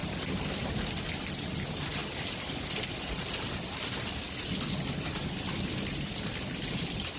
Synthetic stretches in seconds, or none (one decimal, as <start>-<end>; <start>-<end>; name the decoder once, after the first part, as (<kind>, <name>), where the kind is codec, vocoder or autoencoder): 0.0-0.7 (vocoder, BigVGAN v2)